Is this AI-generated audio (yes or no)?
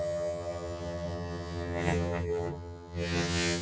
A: yes